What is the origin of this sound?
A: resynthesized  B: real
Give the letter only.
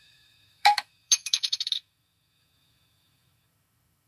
A